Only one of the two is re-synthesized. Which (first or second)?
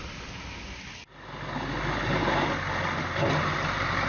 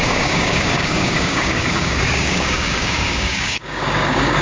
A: second